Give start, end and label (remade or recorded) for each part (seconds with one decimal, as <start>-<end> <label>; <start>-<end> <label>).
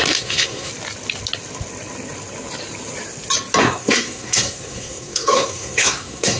0.0-0.7 remade; 0.7-3.6 recorded; 3.6-6.4 remade